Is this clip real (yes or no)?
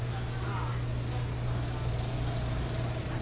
yes